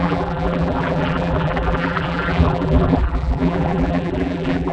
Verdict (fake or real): fake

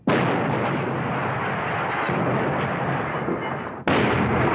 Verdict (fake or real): real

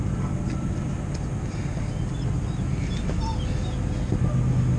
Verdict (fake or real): real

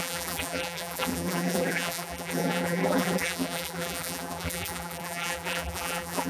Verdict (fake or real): fake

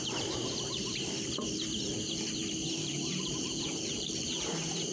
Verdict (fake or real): fake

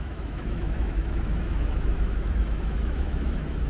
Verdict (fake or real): fake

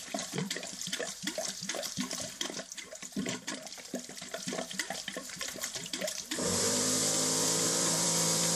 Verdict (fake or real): fake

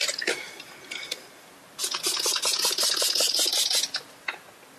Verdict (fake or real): real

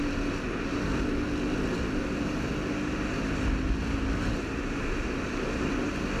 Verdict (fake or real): real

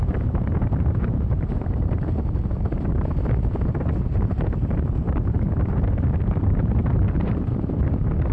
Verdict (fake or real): fake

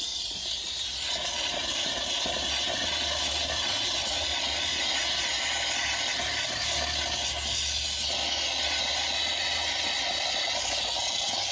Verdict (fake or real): real